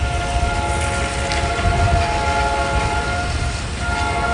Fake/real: real